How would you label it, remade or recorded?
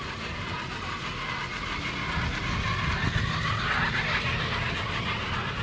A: recorded